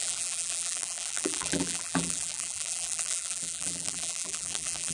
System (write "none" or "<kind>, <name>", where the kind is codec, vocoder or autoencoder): vocoder, BigVGAN v2